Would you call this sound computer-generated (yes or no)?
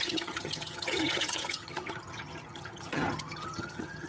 yes